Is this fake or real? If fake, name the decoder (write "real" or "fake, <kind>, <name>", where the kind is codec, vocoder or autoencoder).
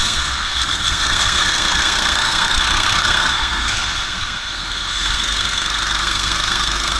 fake, codec, SNAC